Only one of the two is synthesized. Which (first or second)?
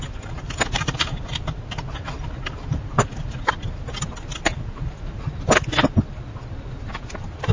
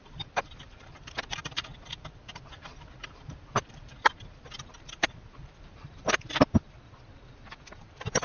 second